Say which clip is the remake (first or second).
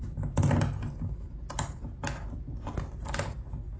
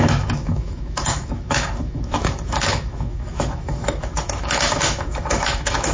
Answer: second